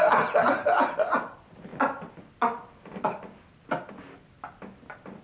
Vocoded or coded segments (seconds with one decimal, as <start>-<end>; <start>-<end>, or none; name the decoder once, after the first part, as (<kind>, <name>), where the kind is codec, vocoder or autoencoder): none